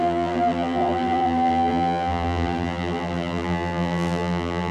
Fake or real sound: fake